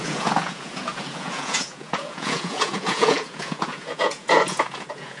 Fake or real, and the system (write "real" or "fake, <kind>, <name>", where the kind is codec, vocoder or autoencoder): fake, vocoder, Vocos